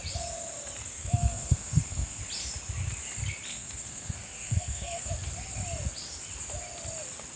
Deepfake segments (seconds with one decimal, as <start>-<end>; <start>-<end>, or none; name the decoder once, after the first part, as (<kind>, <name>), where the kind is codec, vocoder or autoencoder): 0.9-2.2 (codec, SNAC); 3.5-5.1